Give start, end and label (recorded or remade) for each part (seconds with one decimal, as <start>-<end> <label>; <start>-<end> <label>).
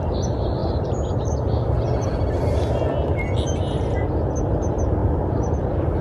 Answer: 0.0-0.6 recorded; 0.6-1.3 remade; 1.3-5.0 recorded; 5.0-5.5 remade; 5.5-6.0 recorded